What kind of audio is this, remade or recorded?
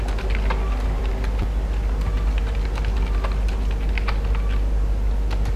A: recorded